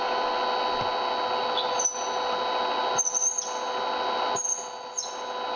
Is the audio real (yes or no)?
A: yes